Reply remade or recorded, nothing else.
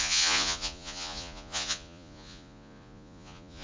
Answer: remade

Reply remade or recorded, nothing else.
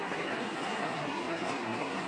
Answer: remade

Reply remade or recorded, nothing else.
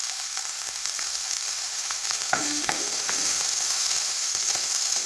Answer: remade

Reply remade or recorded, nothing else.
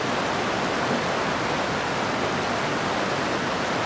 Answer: recorded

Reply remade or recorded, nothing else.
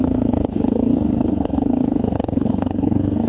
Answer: remade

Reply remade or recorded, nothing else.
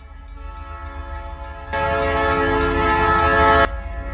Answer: recorded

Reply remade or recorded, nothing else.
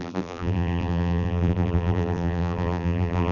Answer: remade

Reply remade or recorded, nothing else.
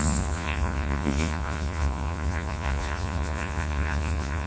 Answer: remade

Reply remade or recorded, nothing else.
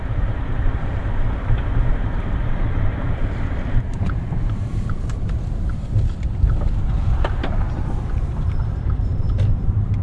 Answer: remade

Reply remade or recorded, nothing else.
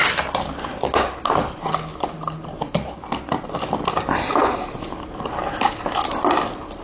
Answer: recorded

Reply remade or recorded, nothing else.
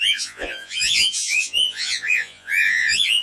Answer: remade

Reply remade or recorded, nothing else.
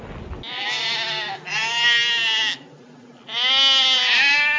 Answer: recorded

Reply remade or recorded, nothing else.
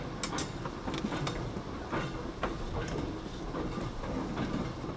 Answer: recorded